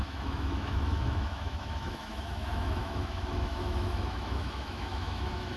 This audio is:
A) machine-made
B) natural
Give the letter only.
A